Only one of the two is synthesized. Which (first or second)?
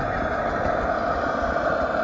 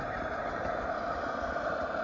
second